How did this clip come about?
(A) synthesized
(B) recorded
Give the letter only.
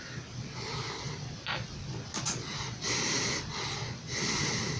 B